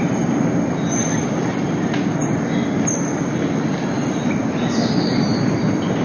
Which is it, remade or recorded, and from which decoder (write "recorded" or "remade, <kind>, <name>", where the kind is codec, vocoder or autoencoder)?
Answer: recorded